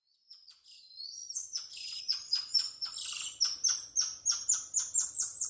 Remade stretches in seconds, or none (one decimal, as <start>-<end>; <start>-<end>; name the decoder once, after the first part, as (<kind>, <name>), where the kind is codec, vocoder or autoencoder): 0.0-2.9 (vocoder, Vocos); 5.1-5.5